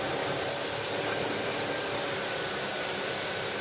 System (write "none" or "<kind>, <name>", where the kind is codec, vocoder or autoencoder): none